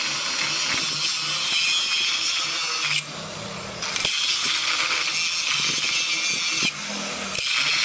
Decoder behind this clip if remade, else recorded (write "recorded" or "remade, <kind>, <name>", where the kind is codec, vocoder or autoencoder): recorded